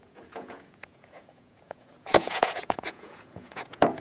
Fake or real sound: fake